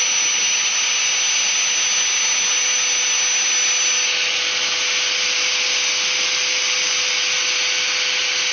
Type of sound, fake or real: real